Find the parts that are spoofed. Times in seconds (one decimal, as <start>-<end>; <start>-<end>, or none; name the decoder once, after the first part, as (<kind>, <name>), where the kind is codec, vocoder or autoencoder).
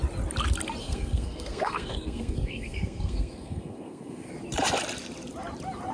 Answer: 0.8-4.3 (codec, SNAC)